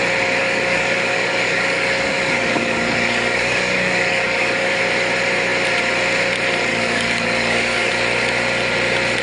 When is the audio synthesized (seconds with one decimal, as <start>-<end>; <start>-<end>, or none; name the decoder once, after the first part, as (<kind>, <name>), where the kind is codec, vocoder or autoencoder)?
0.4-4.8 (codec, DAC); 6.7-7.9